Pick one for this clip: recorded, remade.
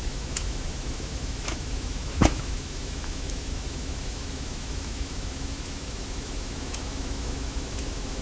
remade